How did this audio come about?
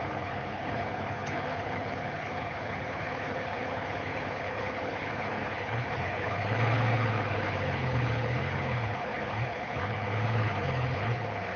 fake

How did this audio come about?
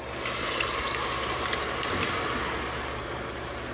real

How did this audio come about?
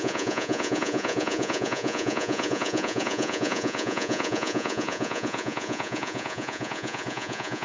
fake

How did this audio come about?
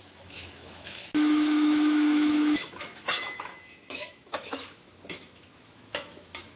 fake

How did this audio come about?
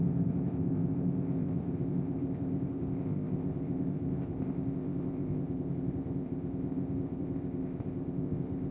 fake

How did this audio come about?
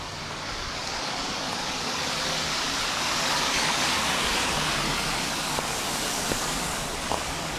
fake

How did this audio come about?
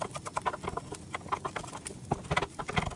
real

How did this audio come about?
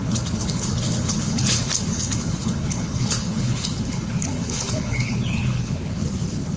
fake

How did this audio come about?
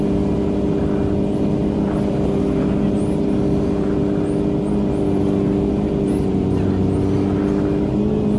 real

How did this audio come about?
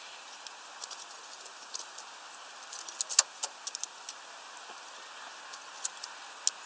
real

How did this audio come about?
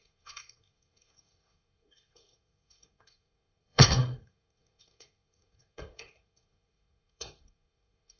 fake